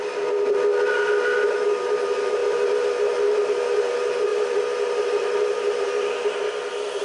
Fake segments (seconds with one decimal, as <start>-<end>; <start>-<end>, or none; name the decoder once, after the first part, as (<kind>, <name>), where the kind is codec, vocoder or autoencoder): none